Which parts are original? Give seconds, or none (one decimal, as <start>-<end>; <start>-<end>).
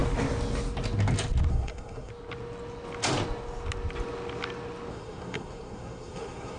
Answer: 0.0-1.5; 2.1-4.9